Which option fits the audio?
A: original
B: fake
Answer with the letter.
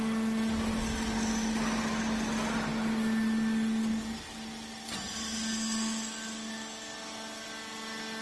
A